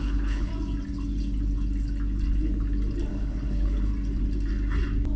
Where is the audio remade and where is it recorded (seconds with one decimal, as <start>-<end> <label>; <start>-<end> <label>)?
0.0-0.5 remade; 0.5-3.1 recorded; 3.1-3.9 remade; 3.9-5.2 recorded